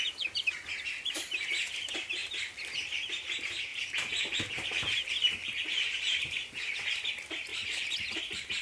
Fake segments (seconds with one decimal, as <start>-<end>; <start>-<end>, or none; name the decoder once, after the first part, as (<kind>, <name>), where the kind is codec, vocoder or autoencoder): 3.7-6.9 (vocoder, BigVGAN v2); 7.5-8.2